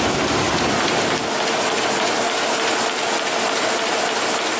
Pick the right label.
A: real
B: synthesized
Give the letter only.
A